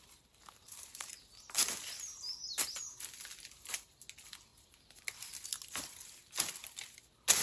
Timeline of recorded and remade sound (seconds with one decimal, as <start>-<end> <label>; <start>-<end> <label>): 0.0-7.4 recorded